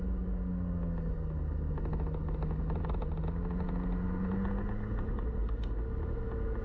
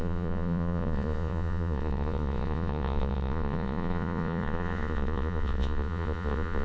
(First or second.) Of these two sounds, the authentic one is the first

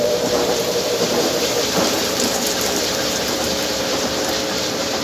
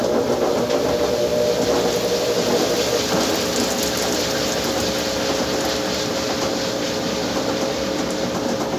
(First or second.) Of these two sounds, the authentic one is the second